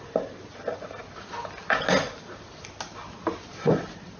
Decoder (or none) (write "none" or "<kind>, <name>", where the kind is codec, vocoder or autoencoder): none